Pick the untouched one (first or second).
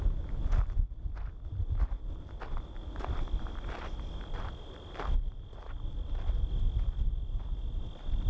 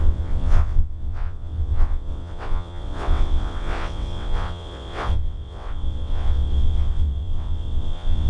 first